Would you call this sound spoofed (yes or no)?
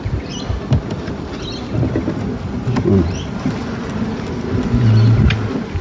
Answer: no